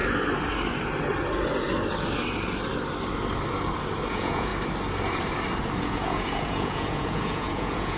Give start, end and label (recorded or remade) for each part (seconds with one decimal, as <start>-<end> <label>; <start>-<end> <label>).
0.0-4.1 recorded; 4.1-4.5 remade; 4.5-5.8 recorded; 5.8-8.0 remade